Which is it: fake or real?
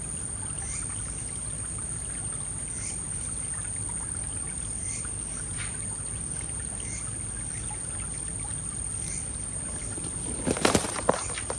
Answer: real